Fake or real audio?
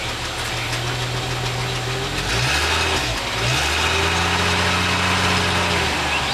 real